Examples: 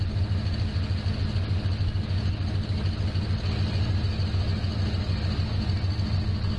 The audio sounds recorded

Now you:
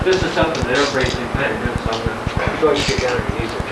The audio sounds recorded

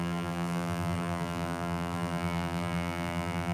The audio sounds remade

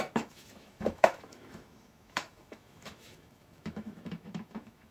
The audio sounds remade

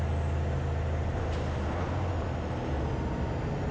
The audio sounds recorded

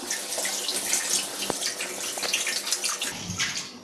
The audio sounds recorded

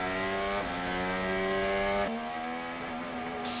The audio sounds recorded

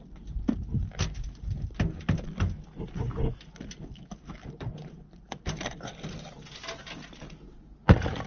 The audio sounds recorded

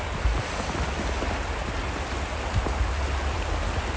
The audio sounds recorded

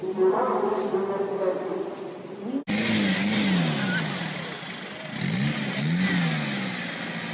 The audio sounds recorded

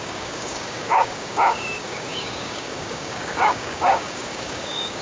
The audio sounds remade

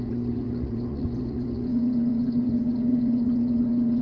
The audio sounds remade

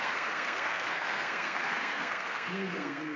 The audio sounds remade